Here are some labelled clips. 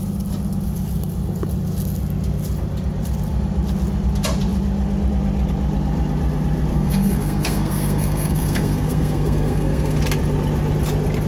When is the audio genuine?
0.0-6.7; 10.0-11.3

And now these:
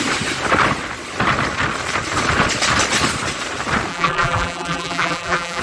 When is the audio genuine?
0.0-3.9

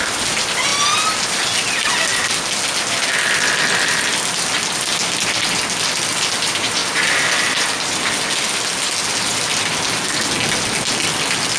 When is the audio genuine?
0.0-11.6

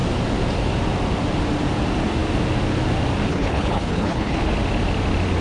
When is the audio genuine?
0.0-3.3; 4.5-5.4